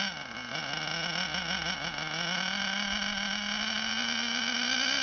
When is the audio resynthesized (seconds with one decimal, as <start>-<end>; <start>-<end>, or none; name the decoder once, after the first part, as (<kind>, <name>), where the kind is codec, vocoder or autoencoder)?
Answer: none